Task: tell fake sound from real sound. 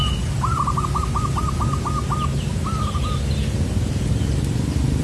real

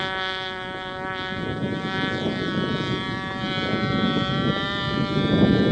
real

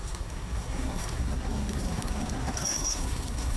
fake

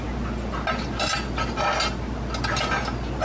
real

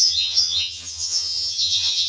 fake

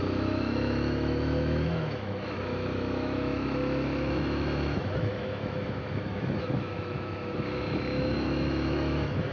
fake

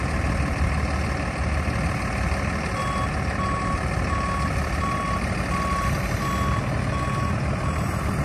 real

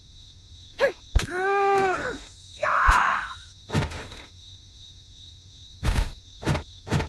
fake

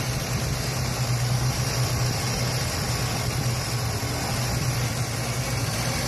real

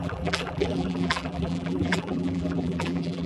fake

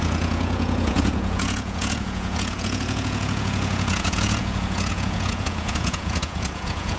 fake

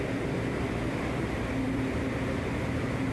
fake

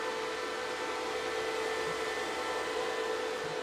real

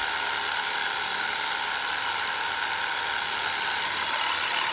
real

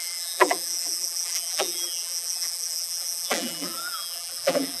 fake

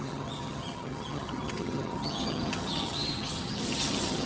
fake